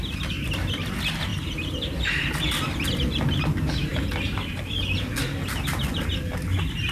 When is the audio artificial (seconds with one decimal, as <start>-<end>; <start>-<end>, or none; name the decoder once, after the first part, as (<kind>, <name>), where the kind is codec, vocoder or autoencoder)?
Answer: 1.3-2.3 (vocoder, BigVGAN v2)